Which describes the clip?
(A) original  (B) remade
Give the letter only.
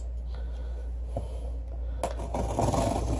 A